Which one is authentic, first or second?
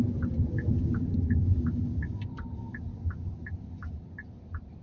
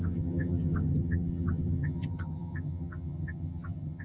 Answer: first